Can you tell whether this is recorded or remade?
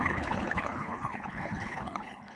remade